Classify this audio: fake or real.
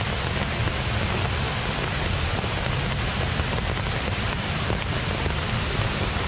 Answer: real